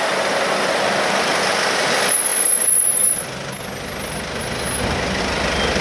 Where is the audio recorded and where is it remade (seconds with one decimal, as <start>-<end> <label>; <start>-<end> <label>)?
0.0-5.8 recorded